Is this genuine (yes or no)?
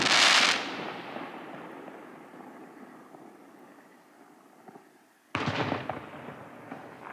yes